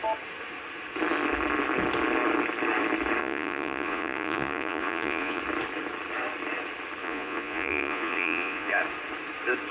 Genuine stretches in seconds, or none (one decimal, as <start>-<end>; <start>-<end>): 0.0-3.2; 5.4-7.0; 8.7-9.7